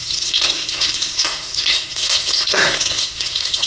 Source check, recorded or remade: remade